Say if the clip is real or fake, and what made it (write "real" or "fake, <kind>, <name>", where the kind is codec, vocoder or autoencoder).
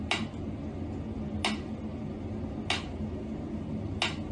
real